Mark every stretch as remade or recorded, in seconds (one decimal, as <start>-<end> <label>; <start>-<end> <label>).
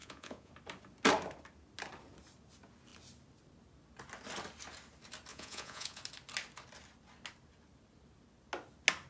0.0-0.5 remade; 0.5-5.3 recorded; 5.3-6.0 remade; 6.0-9.1 recorded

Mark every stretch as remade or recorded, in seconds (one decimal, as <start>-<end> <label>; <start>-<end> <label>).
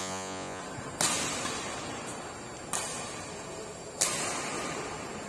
0.0-0.6 remade; 0.6-5.3 recorded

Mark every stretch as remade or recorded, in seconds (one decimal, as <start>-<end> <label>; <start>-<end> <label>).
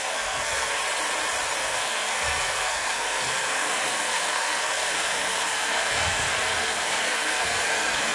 0.0-0.8 remade; 0.8-1.6 recorded; 1.6-8.1 remade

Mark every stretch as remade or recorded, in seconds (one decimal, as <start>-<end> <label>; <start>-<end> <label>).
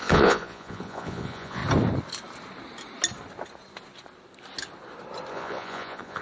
0.0-1.6 remade; 1.6-5.3 recorded; 5.3-6.2 remade